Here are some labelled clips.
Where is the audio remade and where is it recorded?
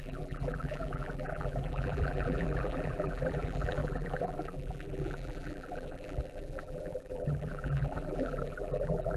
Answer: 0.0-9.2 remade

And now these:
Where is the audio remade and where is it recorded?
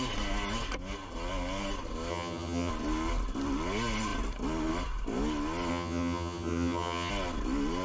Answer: 0.0-2.1 recorded; 2.1-2.7 remade; 2.7-5.7 recorded; 5.7-7.1 remade; 7.1-7.8 recorded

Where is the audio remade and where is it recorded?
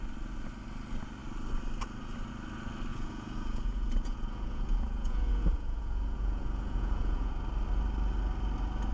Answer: 0.0-2.9 recorded; 2.9-7.3 remade; 7.3-8.9 recorded